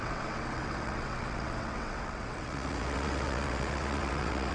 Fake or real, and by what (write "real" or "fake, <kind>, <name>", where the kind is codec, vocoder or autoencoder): fake, vocoder, WaveNeXt